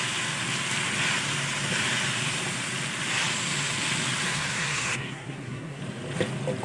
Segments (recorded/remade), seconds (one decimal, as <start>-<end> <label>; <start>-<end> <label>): 0.0-4.2 recorded; 4.2-5.8 remade; 5.8-6.6 recorded